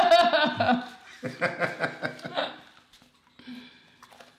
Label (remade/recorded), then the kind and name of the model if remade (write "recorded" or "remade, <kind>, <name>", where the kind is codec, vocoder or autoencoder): recorded